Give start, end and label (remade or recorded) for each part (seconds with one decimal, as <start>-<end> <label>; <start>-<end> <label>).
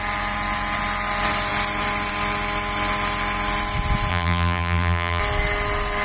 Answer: 0.0-4.1 recorded; 4.1-5.2 remade; 5.2-6.0 recorded